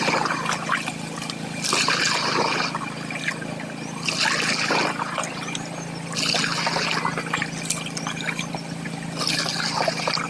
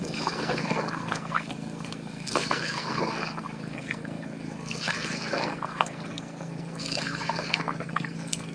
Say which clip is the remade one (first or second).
second